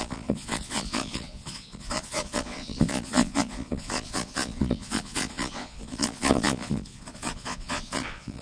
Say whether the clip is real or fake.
fake